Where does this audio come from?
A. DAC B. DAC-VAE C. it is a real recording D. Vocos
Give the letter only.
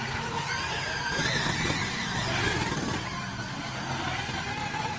C